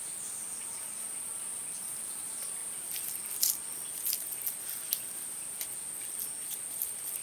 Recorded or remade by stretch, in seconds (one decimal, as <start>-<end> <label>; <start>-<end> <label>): 0.0-7.2 recorded